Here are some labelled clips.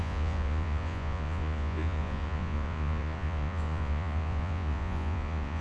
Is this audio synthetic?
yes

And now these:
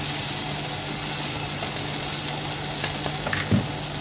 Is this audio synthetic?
no